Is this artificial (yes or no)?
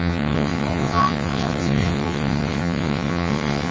yes